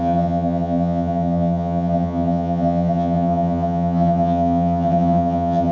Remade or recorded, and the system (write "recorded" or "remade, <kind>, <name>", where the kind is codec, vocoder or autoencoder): remade, vocoder, HiFi-GAN